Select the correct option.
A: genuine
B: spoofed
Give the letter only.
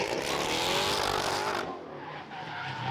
A